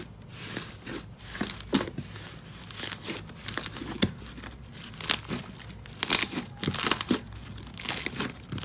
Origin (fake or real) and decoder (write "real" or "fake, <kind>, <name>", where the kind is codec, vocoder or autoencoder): real